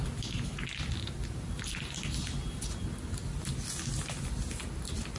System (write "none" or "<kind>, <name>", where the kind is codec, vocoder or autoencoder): none